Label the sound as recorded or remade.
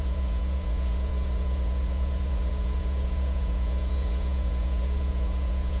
remade